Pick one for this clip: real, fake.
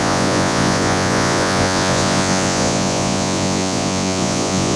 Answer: fake